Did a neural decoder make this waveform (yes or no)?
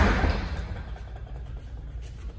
no